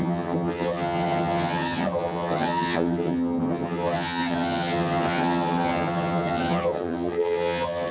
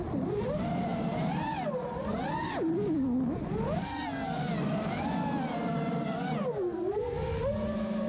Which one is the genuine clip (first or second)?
second